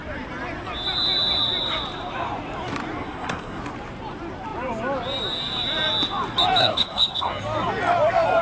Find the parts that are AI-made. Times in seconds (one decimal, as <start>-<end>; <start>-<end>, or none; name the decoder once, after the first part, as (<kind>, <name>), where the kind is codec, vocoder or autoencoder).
3.0-3.6 (codec, SNAC); 6.6-7.3